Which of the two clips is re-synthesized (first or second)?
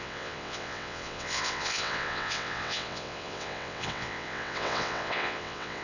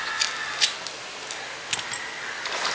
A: first